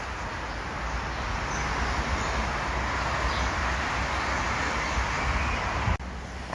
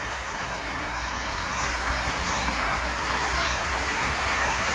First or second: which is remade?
second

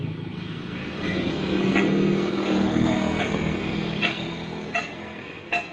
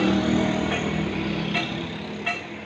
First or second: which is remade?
first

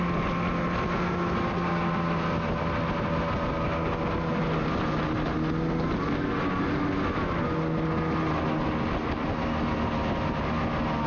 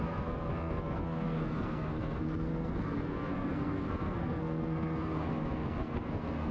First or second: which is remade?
second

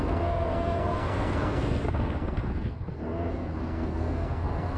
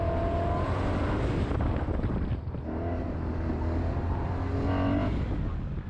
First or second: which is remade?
first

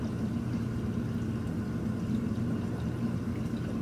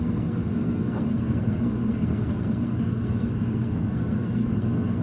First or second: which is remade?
second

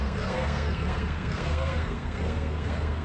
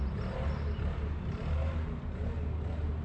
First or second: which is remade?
first